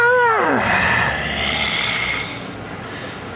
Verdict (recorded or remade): recorded